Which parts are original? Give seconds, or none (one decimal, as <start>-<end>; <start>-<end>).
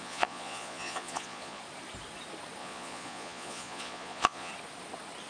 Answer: 1.6-2.6; 4.5-5.3